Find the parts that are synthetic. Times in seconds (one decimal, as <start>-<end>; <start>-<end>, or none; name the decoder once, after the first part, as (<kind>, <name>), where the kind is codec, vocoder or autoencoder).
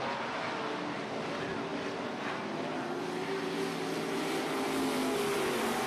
none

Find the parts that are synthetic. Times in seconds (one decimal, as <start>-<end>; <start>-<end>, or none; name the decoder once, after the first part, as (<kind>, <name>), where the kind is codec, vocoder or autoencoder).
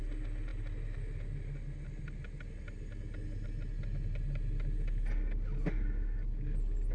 none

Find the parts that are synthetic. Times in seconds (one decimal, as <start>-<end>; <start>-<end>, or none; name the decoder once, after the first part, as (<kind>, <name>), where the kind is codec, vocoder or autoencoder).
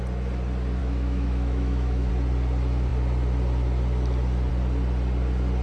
0.8-2.1 (autoencoder, DAC-VAE)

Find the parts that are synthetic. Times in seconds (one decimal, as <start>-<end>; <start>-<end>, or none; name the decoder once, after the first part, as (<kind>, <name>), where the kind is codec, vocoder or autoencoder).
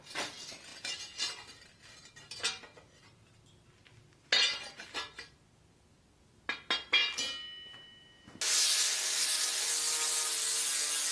none